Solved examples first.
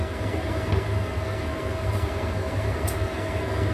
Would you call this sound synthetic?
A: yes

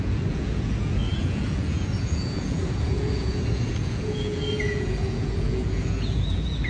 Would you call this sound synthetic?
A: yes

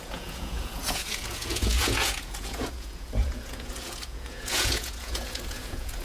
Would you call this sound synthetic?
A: yes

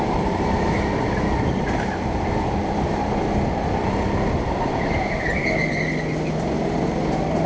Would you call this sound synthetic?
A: no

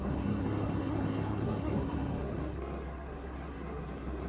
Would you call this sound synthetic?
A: yes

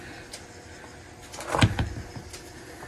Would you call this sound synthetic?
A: no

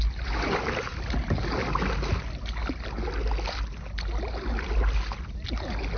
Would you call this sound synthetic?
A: no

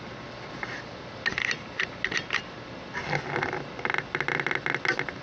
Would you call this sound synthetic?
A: no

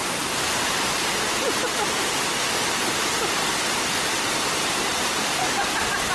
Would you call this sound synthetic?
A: no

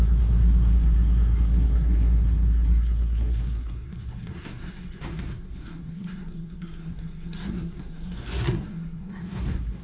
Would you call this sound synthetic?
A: yes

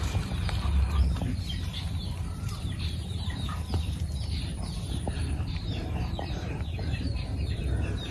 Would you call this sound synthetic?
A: yes